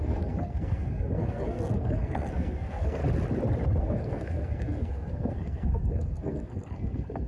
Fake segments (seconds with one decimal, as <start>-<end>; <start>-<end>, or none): 0.0-3.0; 3.8-7.3